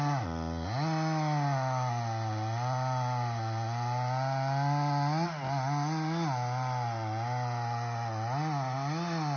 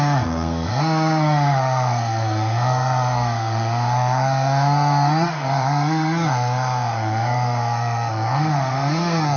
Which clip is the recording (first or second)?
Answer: first